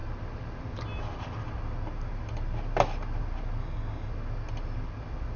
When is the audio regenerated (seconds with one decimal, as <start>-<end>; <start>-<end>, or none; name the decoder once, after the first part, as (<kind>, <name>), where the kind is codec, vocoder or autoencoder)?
3.6-4.1 (codec, DAC)